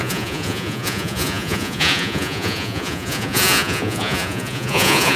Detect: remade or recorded remade